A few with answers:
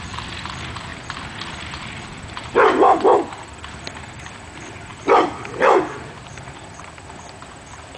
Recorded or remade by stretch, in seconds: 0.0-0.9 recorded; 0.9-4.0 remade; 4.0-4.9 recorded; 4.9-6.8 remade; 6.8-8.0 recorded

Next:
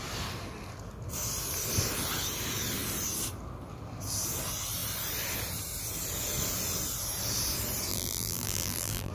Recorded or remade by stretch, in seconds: 0.0-7.9 recorded; 7.9-9.1 remade

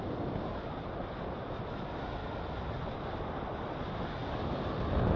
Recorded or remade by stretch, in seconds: 0.0-5.2 recorded

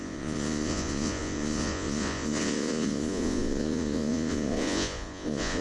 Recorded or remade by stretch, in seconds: 0.0-5.6 remade